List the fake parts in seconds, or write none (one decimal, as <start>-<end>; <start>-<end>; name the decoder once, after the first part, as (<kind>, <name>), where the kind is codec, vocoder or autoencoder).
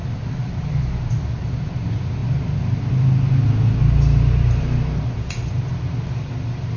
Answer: 0.0-0.8 (vocoder, BigVGAN v2)